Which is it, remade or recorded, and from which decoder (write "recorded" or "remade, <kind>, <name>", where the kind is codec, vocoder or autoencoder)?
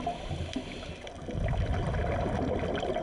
recorded